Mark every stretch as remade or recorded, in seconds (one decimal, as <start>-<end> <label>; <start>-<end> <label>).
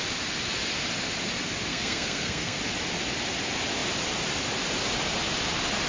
0.0-1.7 recorded; 1.7-2.6 remade; 2.6-5.9 recorded